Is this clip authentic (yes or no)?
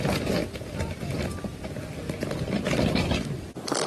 yes